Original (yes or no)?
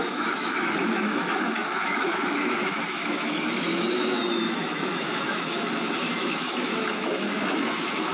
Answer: no